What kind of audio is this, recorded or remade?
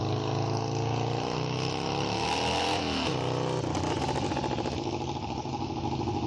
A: recorded